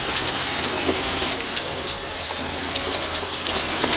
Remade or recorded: remade